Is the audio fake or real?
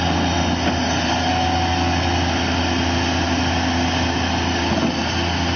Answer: real